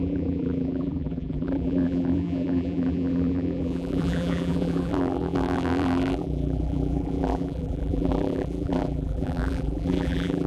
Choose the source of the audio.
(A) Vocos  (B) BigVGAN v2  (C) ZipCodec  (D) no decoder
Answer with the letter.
B